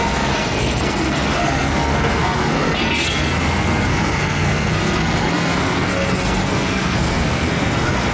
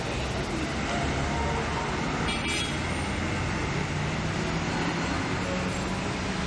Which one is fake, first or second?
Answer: first